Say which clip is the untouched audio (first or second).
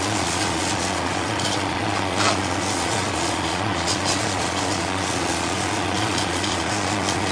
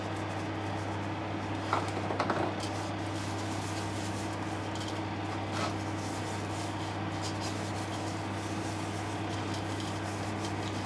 second